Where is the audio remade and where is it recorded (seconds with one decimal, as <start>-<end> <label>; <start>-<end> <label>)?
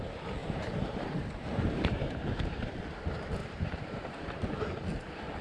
0.0-0.4 recorded; 0.4-2.8 remade; 2.8-3.4 recorded; 3.4-4.6 remade; 4.6-5.4 recorded